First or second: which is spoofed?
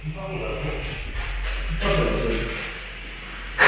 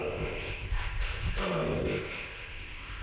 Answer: second